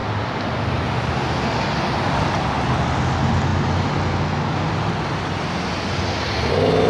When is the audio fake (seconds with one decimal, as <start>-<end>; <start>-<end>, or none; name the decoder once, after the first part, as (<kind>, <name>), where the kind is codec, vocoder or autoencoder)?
none